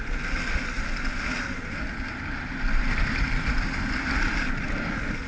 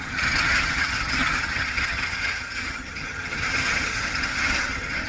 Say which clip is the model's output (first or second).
second